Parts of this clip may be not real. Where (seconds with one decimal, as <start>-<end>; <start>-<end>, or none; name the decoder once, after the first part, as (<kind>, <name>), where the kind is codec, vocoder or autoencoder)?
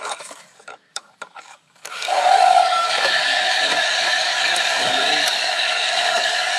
0.0-6.6 (codec, DAC)